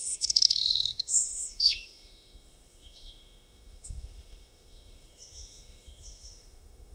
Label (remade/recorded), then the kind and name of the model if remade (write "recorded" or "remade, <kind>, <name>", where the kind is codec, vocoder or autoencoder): remade, autoencoder, DAC-VAE